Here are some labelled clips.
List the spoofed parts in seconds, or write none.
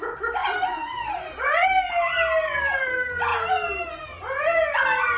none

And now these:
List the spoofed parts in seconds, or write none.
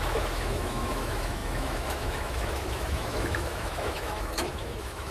0.0-5.1 (autoencoder, DAC-VAE)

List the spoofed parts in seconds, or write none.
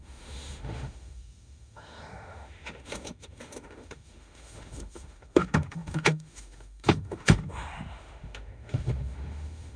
0.0-9.8 (autoencoder, DAC-VAE)